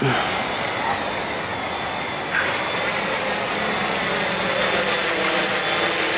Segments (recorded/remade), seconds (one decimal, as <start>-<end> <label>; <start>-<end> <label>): 0.0-6.2 recorded